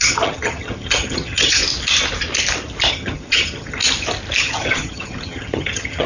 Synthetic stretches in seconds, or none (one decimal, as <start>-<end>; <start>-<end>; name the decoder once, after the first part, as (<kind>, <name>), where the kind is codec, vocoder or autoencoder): 0.0-1.6 (vocoder, HiFi-GAN); 2.9-3.8; 4.4-6.1